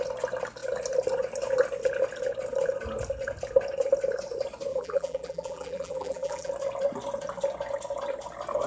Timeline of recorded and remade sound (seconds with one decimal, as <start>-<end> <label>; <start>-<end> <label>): 0.0-4.7 recorded; 4.7-6.5 remade; 6.5-8.7 recorded